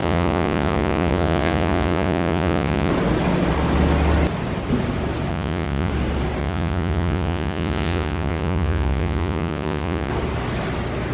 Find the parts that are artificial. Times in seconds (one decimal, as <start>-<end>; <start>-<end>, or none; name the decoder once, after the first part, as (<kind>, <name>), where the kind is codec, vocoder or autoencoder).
0.0-2.9 (vocoder, Vocos); 5.3-5.9; 6.4-10.1

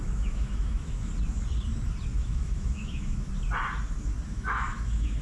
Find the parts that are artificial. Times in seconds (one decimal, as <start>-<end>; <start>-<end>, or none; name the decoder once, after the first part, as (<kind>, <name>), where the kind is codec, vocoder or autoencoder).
0.0-1.1 (autoencoder, DAC-VAE); 2.1-3.3; 4.3-5.2

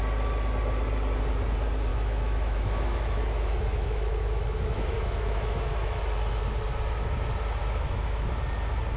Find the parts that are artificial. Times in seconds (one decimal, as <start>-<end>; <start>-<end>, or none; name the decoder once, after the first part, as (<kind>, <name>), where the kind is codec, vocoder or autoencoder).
1.9-6.0 (autoencoder, DAC-VAE); 7.6-8.3

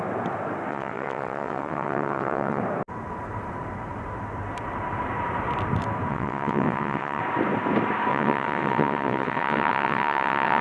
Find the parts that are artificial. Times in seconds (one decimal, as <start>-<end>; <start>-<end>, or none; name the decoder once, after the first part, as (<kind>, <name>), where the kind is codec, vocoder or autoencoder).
0.7-2.6 (vocoder, WaveNeXt); 6.1-7.2; 8.1-10.6

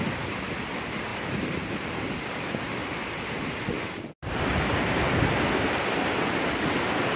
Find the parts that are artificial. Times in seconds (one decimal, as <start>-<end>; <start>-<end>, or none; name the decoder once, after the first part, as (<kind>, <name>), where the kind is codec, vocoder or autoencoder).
1.1-2.0 (vocoder, BigVGAN v2)